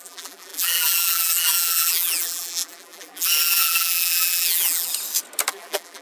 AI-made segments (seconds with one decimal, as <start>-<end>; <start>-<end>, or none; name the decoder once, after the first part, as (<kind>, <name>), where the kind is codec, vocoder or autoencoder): 0.0-4.9 (vocoder, BigVGAN v2); 5.5-6.0